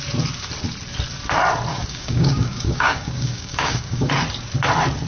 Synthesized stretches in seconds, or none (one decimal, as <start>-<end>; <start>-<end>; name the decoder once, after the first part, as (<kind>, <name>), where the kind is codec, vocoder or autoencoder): 1.7-4.1 (codec, DAC)